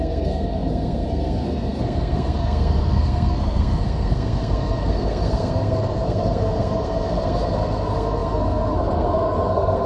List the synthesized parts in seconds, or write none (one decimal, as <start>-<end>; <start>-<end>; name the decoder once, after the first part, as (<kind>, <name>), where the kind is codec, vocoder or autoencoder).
0.0-9.9 (codec, SNAC)